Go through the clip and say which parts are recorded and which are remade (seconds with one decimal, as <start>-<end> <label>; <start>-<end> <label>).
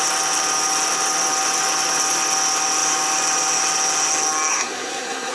0.0-4.5 recorded; 4.5-5.3 remade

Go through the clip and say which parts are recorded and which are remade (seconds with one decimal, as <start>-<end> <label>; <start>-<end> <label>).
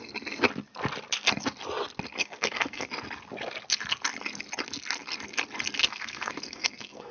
0.0-2.2 recorded; 2.2-2.9 remade; 2.9-5.8 recorded; 5.8-7.1 remade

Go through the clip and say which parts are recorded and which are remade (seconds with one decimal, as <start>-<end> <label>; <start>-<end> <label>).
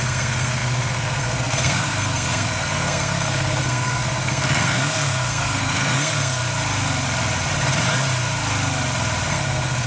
0.0-6.4 remade; 6.4-9.3 recorded; 9.3-9.9 remade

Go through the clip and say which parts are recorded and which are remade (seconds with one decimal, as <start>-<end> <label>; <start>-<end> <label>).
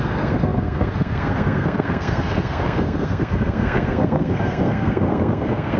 0.0-5.8 remade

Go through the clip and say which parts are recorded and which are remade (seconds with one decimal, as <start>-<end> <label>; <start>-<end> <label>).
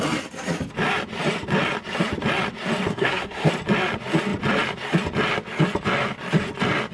0.0-2.9 recorded; 2.9-3.5 remade; 3.5-6.9 recorded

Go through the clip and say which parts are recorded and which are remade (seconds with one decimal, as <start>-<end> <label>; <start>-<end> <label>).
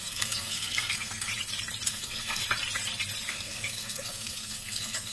0.0-1.3 remade; 1.3-1.9 recorded; 1.9-2.4 remade; 2.4-3.3 recorded; 3.3-5.1 remade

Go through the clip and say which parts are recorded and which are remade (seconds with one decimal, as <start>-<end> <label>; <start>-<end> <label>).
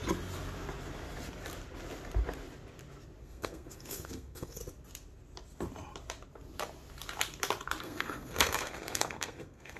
0.0-3.2 recorded; 3.2-4.6 remade; 4.6-7.8 recorded; 7.8-9.8 remade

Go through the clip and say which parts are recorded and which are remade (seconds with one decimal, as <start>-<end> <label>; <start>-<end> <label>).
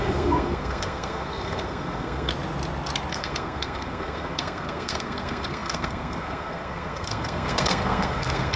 0.0-2.3 remade; 2.3-3.1 recorded; 3.1-8.6 remade